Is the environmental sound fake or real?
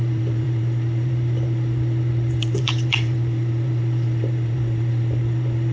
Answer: fake